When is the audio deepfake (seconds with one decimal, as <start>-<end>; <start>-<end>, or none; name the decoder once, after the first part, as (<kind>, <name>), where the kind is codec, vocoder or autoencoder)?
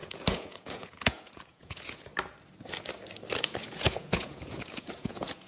0.0-2.1 (vocoder, Vocos); 3.4-5.5